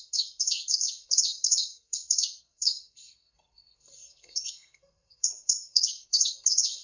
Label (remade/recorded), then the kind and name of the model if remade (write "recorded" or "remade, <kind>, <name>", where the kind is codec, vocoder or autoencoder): remade, codec, SNAC